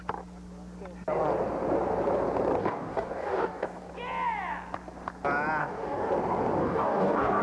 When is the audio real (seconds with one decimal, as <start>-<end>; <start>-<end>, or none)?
0.0-2.6; 3.9-5.6; 6.1-6.6